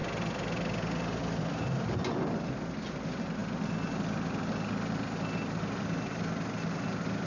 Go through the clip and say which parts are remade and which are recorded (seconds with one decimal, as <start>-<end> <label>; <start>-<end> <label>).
0.0-7.3 recorded

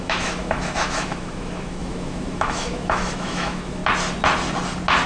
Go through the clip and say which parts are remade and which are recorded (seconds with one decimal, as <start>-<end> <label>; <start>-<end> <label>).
0.0-3.8 remade; 3.8-5.1 recorded

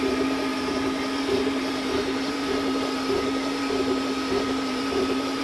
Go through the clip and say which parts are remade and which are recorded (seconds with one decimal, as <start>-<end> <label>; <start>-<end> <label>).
0.0-5.4 remade

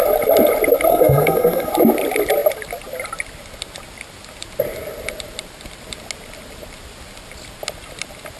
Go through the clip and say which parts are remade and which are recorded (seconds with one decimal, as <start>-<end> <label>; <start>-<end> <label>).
0.0-0.9 recorded; 0.9-1.7 remade; 1.7-8.4 recorded